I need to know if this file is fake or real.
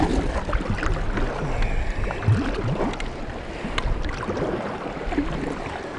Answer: real